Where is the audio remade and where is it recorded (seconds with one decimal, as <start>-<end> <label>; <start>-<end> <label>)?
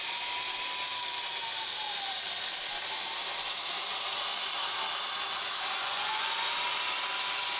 0.0-5.8 recorded; 5.8-6.5 remade; 6.5-7.6 recorded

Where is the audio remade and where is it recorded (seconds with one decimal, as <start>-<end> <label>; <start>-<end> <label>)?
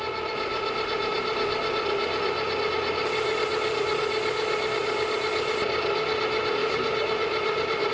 0.0-6.6 recorded; 6.6-7.9 remade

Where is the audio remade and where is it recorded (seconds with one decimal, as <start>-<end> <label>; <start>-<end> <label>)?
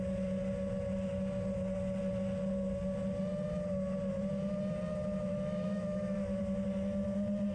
0.0-5.3 recorded; 5.3-6.4 remade; 6.4-7.5 recorded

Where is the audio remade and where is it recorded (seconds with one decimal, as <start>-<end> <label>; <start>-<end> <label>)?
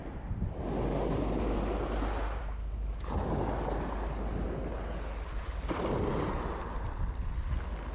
0.0-7.9 recorded